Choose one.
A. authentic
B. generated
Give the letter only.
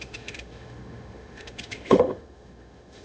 B